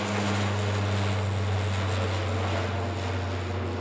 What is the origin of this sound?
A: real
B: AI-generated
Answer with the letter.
A